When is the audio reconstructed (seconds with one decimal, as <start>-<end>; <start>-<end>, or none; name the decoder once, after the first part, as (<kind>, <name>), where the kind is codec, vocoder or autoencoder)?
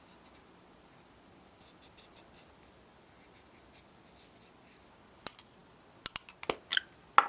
none